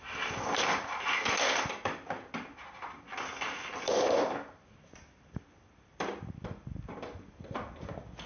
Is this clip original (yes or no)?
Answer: yes